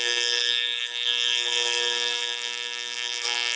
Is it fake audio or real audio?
fake